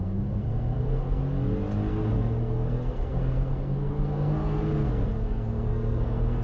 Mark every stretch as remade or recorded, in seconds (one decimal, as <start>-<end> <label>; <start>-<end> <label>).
0.0-1.2 remade; 1.2-1.9 recorded; 1.9-6.4 remade